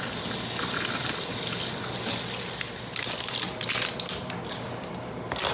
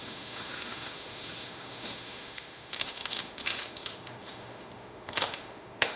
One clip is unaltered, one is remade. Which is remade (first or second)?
second